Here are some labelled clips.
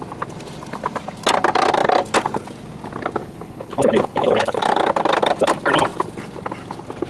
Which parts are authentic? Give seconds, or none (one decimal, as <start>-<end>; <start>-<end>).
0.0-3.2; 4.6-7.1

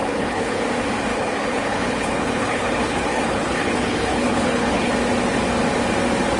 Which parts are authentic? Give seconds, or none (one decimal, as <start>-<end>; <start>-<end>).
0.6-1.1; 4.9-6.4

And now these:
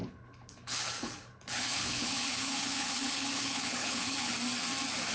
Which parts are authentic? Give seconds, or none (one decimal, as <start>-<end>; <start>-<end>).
4.3-5.1